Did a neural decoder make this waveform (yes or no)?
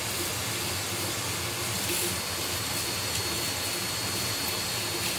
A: no